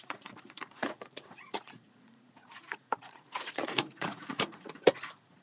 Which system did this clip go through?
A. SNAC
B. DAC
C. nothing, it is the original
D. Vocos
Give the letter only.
D